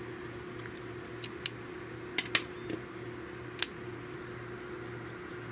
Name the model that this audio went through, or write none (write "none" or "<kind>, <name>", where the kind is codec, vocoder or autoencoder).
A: none